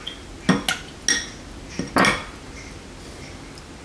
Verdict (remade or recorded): recorded